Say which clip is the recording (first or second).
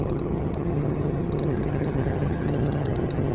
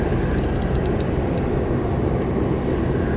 second